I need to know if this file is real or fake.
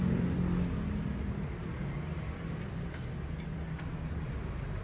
real